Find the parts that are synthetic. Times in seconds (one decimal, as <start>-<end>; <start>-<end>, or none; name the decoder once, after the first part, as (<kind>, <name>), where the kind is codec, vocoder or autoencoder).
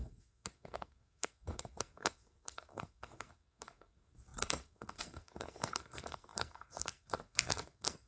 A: 0.0-8.1 (codec, SNAC)